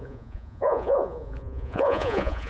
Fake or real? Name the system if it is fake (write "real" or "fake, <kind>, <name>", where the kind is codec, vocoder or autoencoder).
fake, vocoder, Vocos